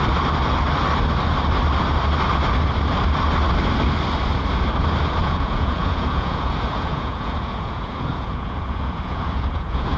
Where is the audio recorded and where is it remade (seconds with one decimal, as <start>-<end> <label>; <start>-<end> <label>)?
0.0-5.2 recorded; 5.2-10.0 remade